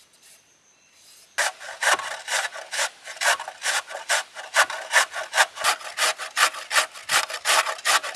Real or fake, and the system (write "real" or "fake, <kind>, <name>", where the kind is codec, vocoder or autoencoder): real